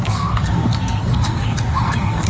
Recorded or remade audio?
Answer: remade